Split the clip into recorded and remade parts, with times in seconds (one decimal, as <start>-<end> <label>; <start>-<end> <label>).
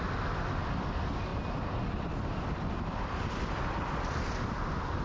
0.0-5.0 recorded